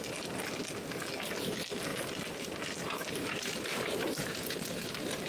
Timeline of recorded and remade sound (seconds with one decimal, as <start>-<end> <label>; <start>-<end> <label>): 0.0-2.8 recorded; 2.8-5.3 remade